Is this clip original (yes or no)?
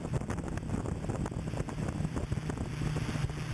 yes